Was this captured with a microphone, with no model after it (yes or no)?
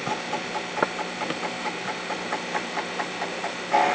yes